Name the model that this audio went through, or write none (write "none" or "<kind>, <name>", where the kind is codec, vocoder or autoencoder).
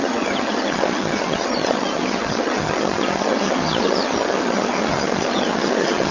vocoder, HiFi-GAN